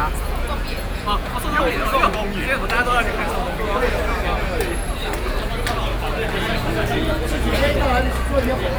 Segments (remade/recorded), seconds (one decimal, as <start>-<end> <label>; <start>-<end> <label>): 0.0-1.9 remade; 1.9-7.1 recorded; 7.1-7.7 remade; 7.7-8.4 recorded; 8.4-8.8 remade